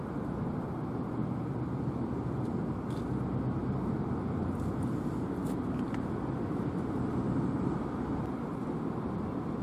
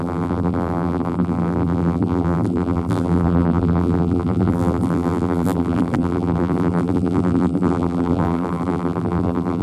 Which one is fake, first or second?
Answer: second